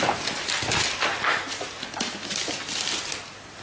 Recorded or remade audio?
recorded